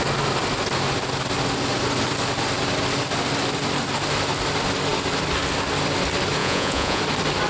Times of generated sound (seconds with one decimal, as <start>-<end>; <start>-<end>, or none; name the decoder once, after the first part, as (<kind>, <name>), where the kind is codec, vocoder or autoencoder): 6.4-7.0 (vocoder, Vocos)